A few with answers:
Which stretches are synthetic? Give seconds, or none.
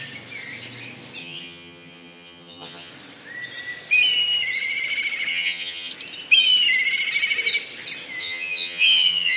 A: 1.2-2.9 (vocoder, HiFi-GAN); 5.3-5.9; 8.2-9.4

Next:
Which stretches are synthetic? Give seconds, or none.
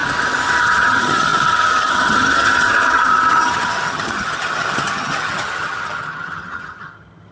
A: 0.6-7.3 (vocoder, HiFi-GAN)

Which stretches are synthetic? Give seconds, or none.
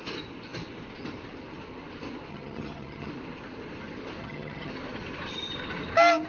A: 2.3-3.1 (vocoder, HiFi-GAN); 4.2-4.7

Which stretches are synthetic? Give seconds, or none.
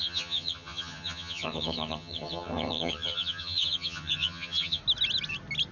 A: 0.0-4.8 (vocoder, HiFi-GAN)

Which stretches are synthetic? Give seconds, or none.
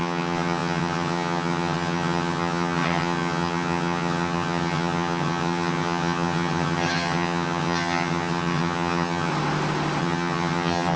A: 0.0-9.3 (vocoder, HiFi-GAN); 10.0-11.0